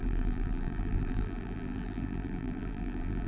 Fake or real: fake